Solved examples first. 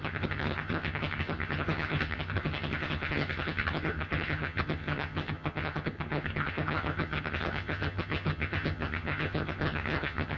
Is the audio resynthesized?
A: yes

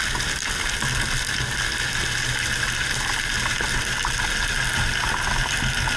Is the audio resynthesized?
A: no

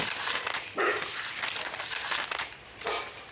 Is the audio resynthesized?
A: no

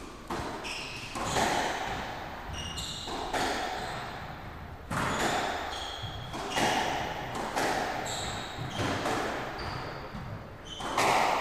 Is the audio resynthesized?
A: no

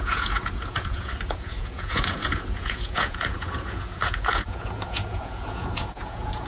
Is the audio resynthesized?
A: yes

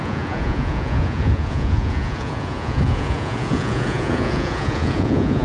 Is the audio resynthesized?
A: yes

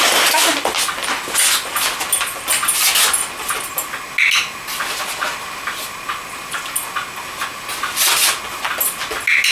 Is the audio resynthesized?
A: no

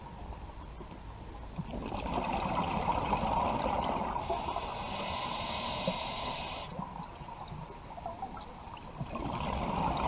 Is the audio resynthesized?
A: no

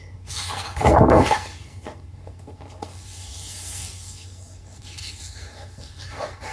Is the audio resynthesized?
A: yes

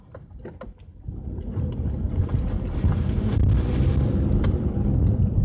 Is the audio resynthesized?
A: yes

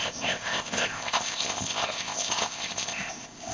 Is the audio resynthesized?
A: yes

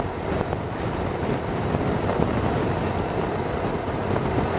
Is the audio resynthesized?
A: no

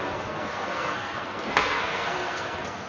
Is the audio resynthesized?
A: yes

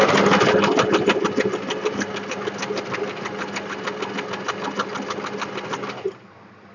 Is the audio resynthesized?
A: no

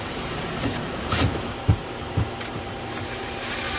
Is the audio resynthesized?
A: yes